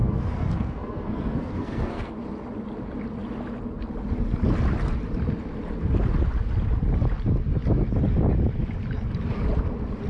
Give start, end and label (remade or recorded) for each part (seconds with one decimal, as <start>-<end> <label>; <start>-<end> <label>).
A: 0.0-2.1 remade; 2.1-10.1 recorded